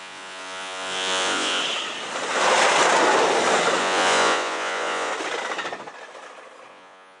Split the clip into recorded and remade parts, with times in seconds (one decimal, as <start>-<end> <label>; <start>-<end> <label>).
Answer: 0.0-1.6 remade; 1.6-3.8 recorded; 3.8-5.1 remade; 5.1-6.7 recorded; 6.7-7.2 remade